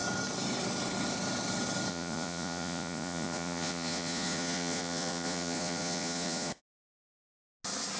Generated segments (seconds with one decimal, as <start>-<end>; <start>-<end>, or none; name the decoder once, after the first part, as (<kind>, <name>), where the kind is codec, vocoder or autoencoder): 1.9-6.5 (vocoder, Vocos)